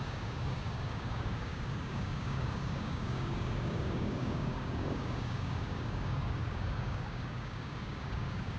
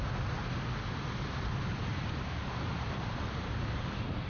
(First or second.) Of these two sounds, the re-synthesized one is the first